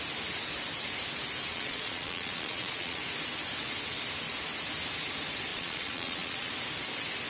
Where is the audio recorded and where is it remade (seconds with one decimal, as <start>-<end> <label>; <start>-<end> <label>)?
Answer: 0.0-1.5 recorded; 1.5-3.0 remade; 3.0-5.5 recorded; 5.5-6.5 remade; 6.5-7.3 recorded